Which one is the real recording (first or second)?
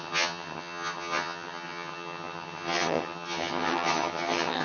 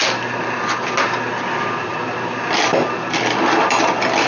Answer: second